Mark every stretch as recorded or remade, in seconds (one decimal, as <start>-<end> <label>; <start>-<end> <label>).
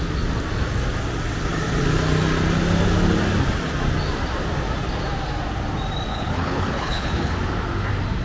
0.0-6.1 recorded; 6.1-7.3 remade; 7.3-8.2 recorded